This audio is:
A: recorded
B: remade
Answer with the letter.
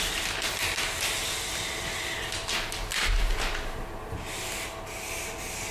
A